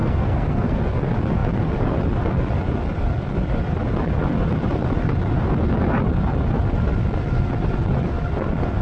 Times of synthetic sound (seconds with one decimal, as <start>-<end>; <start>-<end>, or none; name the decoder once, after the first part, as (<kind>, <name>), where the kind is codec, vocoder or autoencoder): 0.0-0.8 (codec, SNAC)